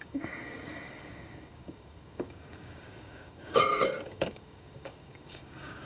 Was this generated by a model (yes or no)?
yes